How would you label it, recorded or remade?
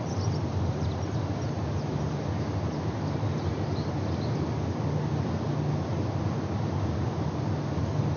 recorded